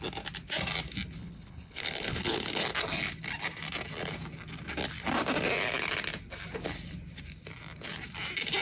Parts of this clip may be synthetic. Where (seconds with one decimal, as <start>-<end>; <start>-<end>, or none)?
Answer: 1.2-2.6